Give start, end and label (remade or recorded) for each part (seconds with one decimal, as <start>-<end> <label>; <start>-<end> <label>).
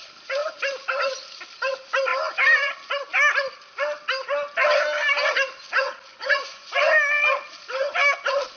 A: 0.0-6.1 recorded; 6.1-6.8 remade; 6.8-8.6 recorded